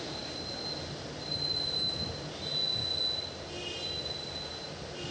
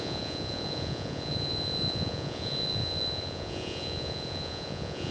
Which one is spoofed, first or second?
second